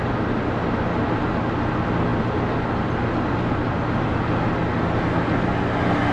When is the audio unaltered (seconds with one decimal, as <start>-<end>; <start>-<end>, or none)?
0.0-6.1